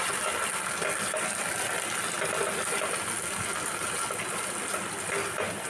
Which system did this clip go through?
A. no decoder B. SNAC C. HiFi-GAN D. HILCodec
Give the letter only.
A